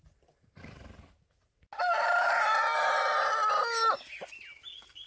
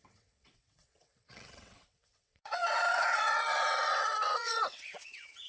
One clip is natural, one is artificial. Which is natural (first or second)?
first